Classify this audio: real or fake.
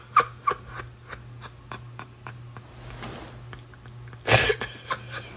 real